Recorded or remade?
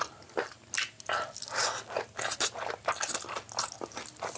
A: recorded